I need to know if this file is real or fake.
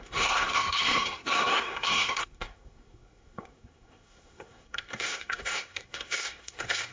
fake